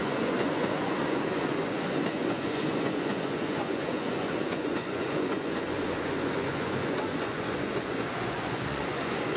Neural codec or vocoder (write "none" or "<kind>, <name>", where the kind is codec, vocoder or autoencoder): vocoder, Vocos